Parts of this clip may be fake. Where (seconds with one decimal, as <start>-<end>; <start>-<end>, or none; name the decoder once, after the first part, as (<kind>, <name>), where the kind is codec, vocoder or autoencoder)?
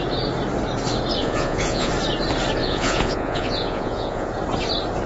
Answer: 1.2-1.9 (vocoder, Vocos); 2.6-4.3